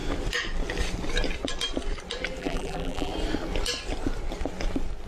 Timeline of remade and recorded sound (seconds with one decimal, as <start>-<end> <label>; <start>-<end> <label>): 0.0-2.4 recorded; 2.4-3.1 remade; 3.1-5.1 recorded